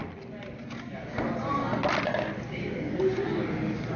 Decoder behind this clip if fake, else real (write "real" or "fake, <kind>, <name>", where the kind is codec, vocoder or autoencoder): real